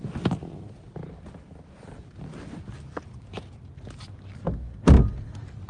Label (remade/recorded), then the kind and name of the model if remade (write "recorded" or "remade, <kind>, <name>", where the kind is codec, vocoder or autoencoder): recorded